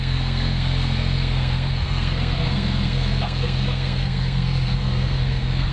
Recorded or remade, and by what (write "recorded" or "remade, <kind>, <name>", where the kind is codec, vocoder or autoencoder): remade, codec, SNAC